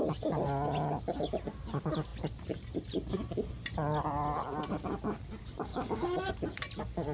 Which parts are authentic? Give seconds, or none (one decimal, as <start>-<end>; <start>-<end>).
0.0-5.7; 6.3-7.1